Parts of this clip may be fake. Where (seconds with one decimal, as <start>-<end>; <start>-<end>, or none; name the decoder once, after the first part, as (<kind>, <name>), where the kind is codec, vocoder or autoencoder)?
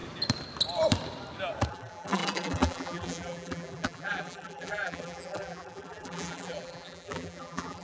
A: 1.7-7.8 (vocoder, BigVGAN v2)